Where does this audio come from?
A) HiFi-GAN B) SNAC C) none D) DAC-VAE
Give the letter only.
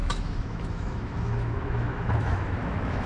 D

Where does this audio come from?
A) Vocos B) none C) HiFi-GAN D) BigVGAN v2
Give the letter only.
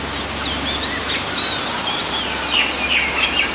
B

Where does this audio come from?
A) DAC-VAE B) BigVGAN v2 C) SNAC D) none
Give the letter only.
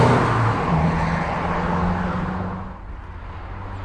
D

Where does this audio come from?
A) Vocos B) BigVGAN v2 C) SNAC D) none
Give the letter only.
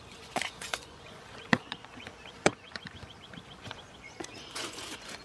A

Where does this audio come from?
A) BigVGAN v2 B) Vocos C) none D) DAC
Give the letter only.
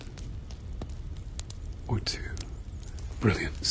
C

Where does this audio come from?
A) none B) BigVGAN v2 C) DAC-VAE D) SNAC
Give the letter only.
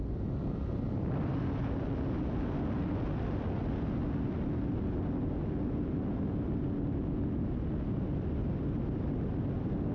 A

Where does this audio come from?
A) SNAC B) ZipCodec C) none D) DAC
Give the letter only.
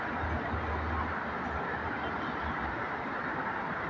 C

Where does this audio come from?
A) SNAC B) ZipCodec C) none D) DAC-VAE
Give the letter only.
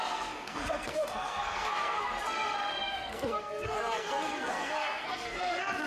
A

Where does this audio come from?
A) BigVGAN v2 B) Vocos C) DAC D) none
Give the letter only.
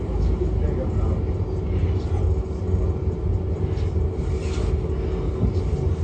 D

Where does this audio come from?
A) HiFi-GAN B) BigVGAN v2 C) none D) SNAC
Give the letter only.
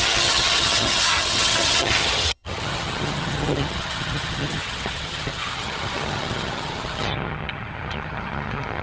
A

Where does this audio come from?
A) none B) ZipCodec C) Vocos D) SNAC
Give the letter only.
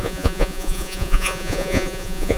C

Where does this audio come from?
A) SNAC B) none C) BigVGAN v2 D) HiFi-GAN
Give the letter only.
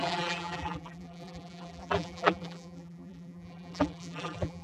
C